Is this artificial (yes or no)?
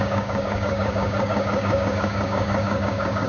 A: yes